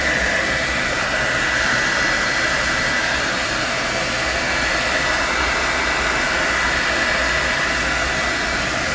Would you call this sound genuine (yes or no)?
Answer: yes